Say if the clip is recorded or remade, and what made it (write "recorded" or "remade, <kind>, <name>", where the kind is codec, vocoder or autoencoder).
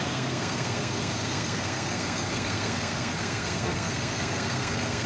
remade, codec, SNAC